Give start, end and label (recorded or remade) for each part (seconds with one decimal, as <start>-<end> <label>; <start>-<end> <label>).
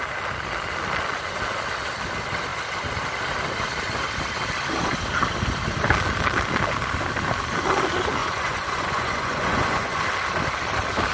0.0-8.2 recorded; 8.2-10.0 remade; 10.0-11.1 recorded